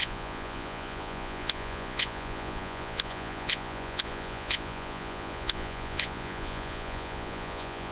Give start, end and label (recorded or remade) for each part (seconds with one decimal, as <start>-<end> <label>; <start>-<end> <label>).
0.0-7.9 remade

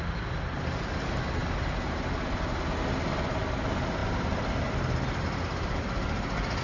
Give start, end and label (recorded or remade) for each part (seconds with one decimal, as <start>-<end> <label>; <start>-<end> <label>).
0.0-6.6 recorded

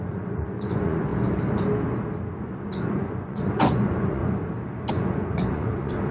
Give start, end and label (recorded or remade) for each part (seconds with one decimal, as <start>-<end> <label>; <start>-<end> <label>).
0.0-1.1 remade; 1.1-2.4 recorded; 2.4-4.2 remade; 4.2-4.9 recorded; 4.9-6.1 remade

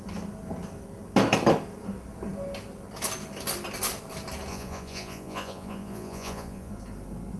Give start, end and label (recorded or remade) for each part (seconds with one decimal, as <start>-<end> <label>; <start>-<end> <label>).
0.0-4.5 recorded; 4.5-6.7 remade; 6.7-7.4 recorded

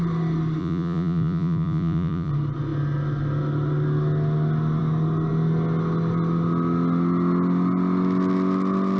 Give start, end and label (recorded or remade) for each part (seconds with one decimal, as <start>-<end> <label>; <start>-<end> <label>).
0.0-0.6 recorded; 0.6-2.3 remade; 2.3-9.0 recorded

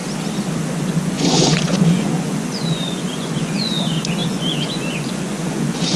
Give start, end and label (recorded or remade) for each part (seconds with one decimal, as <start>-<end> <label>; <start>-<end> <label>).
0.0-0.5 recorded; 0.5-6.0 remade

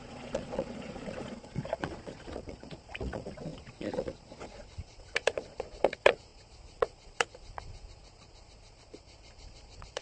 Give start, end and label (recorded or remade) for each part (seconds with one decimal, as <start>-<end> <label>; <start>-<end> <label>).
0.0-10.0 remade